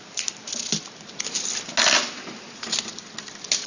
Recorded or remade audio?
recorded